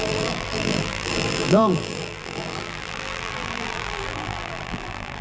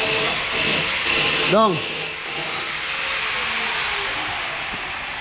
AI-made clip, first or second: first